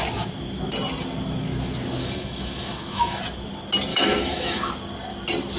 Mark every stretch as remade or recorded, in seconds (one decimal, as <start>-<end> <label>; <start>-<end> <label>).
0.0-2.0 recorded; 2.0-3.2 remade; 3.2-3.9 recorded; 3.9-4.7 remade; 4.7-5.6 recorded